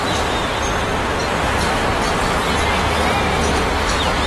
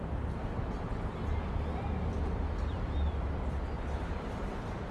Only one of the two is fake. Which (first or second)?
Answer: second